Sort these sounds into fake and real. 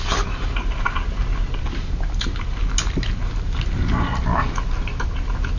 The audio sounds real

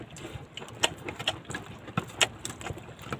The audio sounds real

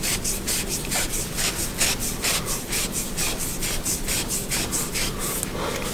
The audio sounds real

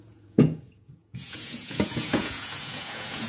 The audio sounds fake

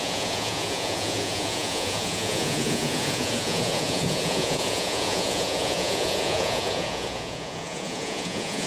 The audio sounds fake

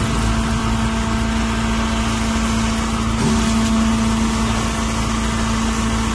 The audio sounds real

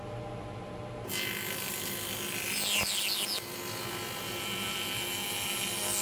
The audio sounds real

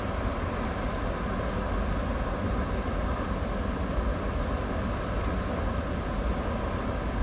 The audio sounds real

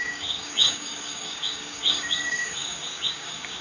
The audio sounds fake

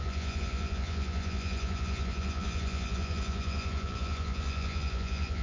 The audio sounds fake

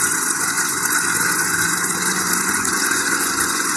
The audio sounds fake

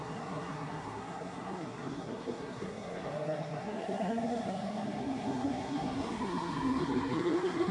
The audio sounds fake